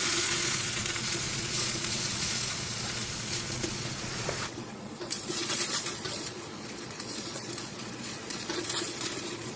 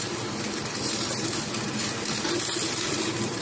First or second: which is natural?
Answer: second